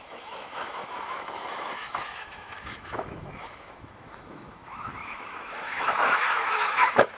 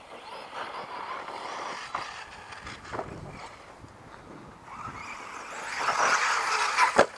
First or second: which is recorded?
second